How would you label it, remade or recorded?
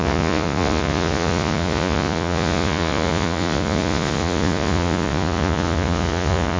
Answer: remade